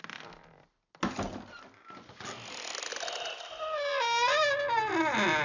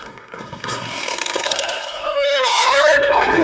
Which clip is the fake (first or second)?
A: second